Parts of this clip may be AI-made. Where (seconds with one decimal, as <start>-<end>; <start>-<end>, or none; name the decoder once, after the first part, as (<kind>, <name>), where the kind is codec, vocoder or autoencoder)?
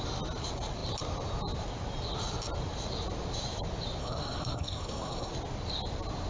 4.0-5.3 (codec, SNAC)